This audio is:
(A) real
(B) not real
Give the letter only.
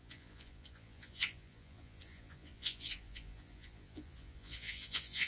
B